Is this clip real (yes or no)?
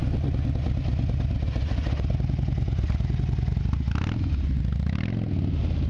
yes